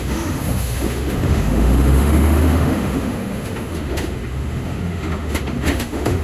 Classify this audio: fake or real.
fake